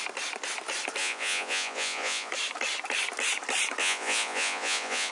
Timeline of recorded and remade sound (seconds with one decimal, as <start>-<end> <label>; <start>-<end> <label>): 0.0-1.0 recorded; 1.0-2.3 remade; 2.3-3.8 recorded; 3.8-5.1 remade